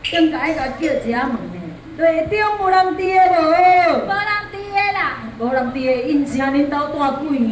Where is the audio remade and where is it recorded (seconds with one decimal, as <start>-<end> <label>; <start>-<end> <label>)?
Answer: 0.0-0.6 recorded; 0.6-7.5 remade